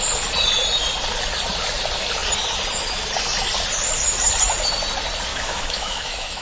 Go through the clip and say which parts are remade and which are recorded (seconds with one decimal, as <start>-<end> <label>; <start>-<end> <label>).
0.0-5.3 recorded; 5.3-6.4 remade